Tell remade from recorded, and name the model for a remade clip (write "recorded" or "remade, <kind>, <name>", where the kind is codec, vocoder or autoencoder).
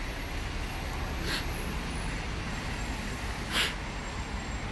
recorded